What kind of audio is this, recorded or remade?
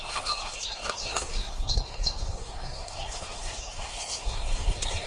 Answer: remade